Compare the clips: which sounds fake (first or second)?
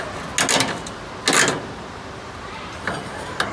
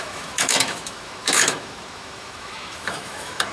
second